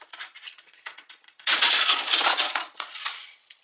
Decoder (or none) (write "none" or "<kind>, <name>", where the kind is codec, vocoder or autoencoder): vocoder, Vocos